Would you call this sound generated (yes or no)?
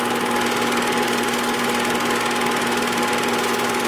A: no